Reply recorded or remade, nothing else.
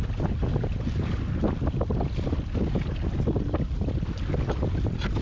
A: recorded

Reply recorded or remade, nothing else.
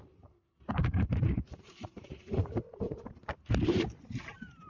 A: remade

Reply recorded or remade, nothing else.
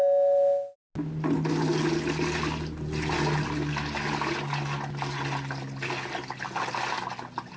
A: recorded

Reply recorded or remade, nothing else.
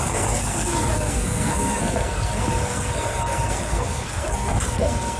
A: remade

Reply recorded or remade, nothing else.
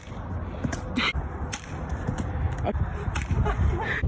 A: recorded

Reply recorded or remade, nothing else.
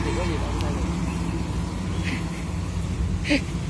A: recorded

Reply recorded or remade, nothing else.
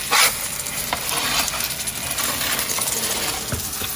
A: recorded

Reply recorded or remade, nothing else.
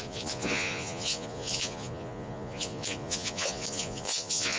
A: remade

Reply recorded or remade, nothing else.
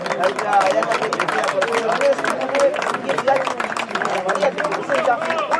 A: recorded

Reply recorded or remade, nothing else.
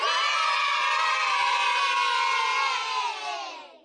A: recorded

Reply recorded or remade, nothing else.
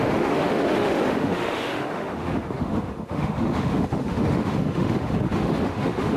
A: remade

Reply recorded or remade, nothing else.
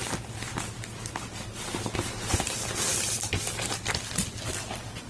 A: recorded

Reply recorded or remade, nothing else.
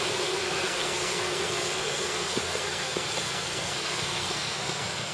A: remade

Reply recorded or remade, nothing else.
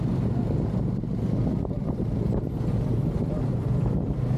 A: recorded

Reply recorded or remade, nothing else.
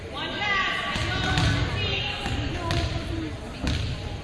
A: recorded